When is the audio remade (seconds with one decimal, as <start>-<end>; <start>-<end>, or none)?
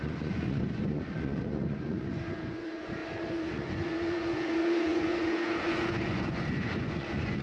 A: 0.0-7.4